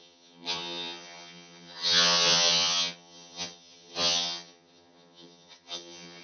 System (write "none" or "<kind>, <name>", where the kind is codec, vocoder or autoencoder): vocoder, HiFi-GAN